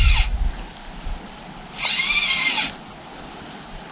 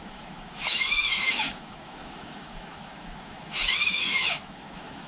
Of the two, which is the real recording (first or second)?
first